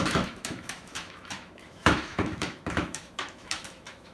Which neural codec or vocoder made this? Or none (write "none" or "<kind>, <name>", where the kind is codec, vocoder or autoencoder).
autoencoder, DAC-VAE